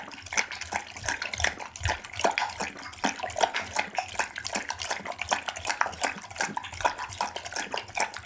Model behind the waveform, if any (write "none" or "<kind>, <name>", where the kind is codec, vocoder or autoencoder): none